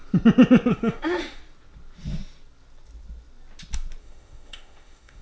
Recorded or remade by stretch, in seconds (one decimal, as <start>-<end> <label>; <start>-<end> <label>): 0.0-0.7 recorded; 0.7-1.4 remade; 1.4-4.0 recorded; 4.0-5.2 remade